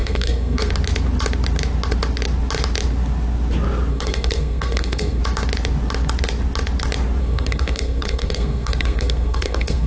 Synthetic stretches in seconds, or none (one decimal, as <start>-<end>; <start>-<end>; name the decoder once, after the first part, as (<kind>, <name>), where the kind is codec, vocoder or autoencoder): 0.0-0.7 (codec, SNAC); 3.9-5.2; 7.2-9.9